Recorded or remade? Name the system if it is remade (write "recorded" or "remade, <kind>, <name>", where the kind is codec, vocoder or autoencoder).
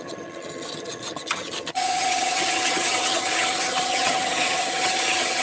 remade, vocoder, HiFi-GAN